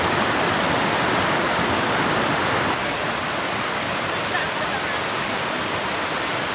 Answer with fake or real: real